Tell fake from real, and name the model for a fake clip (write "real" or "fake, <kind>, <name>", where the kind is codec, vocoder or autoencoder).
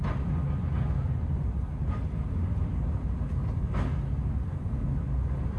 real